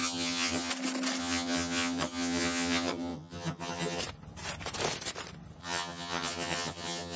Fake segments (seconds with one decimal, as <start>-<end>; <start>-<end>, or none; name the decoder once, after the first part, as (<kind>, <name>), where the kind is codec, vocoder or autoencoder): 0.0-0.7 (vocoder, HiFi-GAN); 1.2-4.0; 5.6-7.2